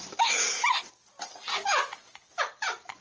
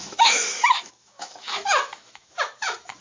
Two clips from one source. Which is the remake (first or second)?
second